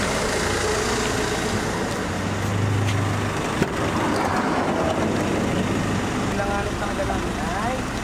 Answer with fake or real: real